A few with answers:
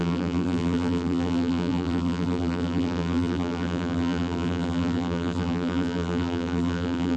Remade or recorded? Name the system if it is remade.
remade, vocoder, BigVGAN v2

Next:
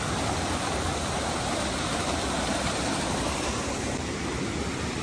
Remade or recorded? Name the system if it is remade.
recorded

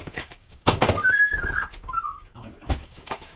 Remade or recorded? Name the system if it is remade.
remade, codec, DAC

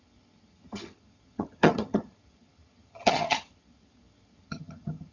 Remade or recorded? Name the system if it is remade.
remade, vocoder, HiFi-GAN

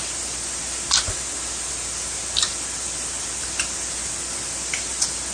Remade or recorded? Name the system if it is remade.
recorded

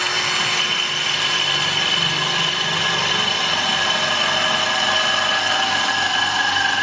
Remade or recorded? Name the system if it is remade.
recorded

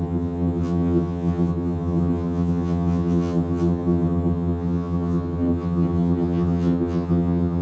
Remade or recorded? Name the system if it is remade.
remade, vocoder, HiFi-GAN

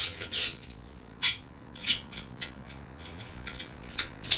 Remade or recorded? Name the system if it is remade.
remade, vocoder, Vocos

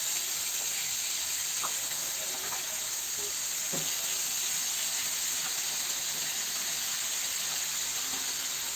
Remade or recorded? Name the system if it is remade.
recorded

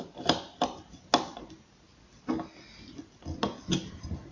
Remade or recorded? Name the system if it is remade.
recorded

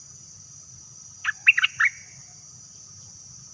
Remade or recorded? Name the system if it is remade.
recorded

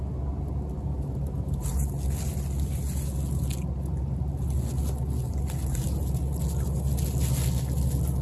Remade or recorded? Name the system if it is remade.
recorded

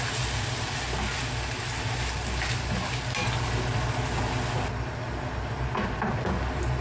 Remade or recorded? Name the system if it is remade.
recorded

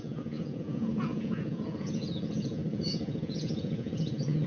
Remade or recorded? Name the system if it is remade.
remade, vocoder, Vocos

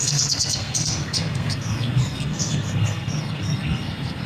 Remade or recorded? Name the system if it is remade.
remade, codec, SNAC